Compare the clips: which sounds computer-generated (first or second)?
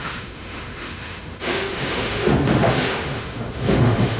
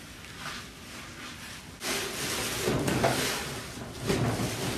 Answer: first